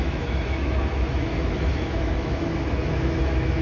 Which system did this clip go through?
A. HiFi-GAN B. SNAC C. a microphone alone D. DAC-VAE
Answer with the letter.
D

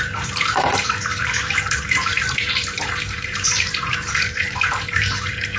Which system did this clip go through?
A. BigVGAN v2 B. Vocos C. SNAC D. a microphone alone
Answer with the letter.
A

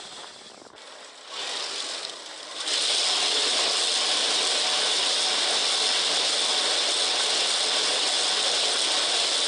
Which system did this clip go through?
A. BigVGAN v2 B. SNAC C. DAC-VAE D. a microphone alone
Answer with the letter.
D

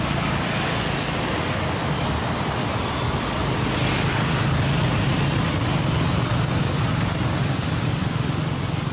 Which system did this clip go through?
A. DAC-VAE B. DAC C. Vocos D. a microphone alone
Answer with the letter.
D